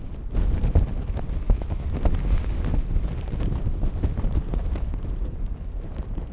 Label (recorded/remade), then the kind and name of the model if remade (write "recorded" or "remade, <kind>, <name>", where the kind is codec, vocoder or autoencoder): recorded